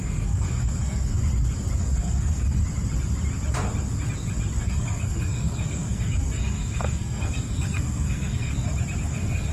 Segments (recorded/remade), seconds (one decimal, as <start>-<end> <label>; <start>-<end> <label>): 0.0-1.2 remade; 1.2-1.8 recorded; 1.8-2.6 remade; 2.6-4.6 recorded; 4.6-8.5 remade; 8.5-9.1 recorded; 9.1-9.5 remade